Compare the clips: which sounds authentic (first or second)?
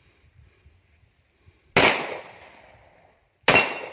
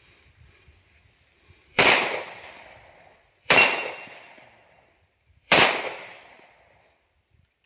first